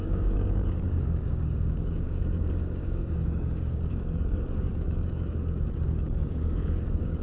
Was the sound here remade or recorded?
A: remade